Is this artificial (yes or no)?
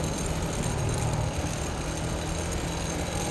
no